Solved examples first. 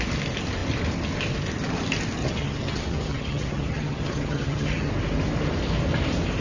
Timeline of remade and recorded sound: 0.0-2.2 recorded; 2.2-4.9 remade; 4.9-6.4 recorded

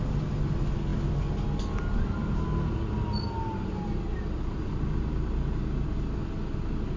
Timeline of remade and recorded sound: 0.0-7.0 recorded